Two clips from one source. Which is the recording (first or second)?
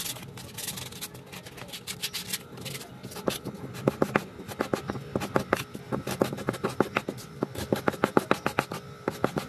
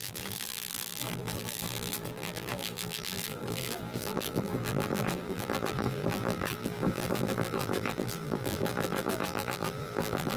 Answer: first